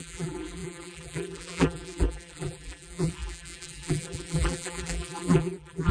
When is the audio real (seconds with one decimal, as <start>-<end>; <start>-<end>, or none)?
none